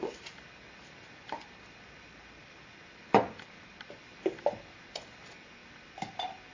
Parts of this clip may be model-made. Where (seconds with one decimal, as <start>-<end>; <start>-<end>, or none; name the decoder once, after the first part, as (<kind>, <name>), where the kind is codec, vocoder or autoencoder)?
none